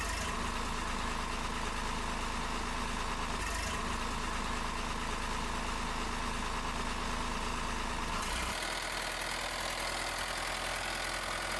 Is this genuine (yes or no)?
yes